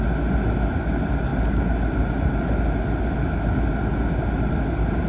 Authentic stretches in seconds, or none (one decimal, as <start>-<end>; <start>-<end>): 0.0-5.1